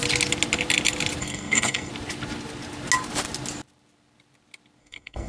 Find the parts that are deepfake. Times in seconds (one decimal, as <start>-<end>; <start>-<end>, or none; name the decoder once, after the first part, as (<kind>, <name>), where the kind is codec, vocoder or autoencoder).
1.2-1.9 (codec, SNAC); 4.8-5.3